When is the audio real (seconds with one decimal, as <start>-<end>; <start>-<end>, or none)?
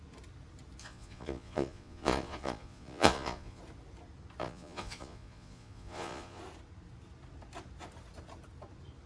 0.0-0.8; 3.6-4.4; 6.4-9.1